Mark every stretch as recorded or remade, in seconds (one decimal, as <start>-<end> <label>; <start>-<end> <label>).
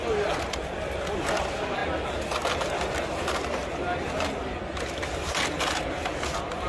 0.0-6.7 recorded